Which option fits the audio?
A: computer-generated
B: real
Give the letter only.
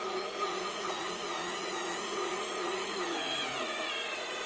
A